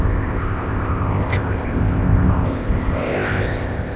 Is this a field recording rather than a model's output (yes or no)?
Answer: no